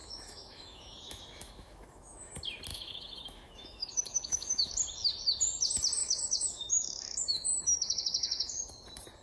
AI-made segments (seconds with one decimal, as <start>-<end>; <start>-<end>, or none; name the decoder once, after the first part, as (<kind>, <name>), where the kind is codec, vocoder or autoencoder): 0.0-2.3 (autoencoder, DAC-VAE); 2.7-4.7; 6.0-8.7